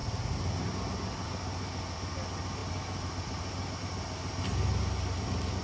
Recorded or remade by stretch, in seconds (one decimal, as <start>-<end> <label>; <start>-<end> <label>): 0.0-0.6 remade; 0.6-5.6 recorded